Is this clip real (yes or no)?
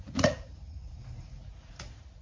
no